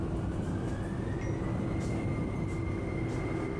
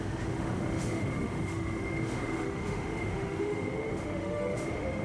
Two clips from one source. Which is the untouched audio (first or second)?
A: first